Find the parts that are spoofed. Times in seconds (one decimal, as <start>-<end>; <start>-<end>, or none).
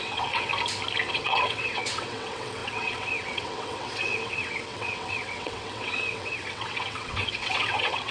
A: 0.0-0.5; 1.1-8.1